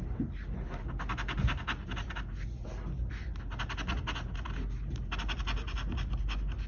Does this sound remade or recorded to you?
recorded